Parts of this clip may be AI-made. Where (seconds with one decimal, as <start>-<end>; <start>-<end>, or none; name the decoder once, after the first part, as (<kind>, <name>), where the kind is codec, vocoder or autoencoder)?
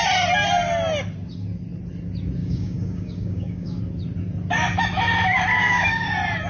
2.4-3.8 (codec, DAC); 5.6-6.1